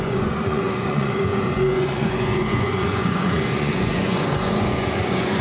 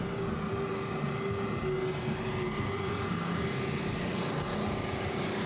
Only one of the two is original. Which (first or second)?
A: second